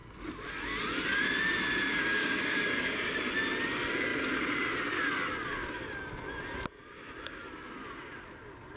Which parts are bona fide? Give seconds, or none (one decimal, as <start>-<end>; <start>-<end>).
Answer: 0.0-2.2; 3.2-6.8; 7.4-8.8